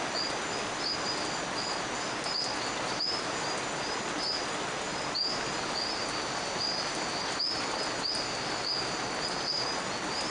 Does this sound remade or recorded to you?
recorded